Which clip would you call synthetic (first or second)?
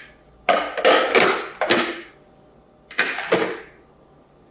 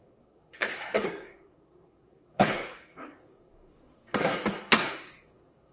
second